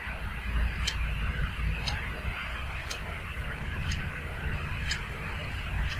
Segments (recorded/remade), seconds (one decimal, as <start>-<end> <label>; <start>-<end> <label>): 0.0-2.5 recorded; 2.5-6.0 remade